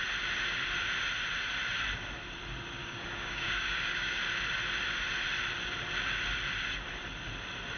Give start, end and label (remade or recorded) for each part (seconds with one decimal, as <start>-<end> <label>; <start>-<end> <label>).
0.0-2.8 recorded; 2.8-4.2 remade; 4.2-7.8 recorded